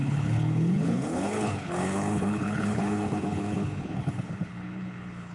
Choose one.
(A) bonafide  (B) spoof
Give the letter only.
B